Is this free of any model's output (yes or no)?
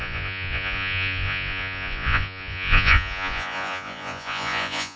no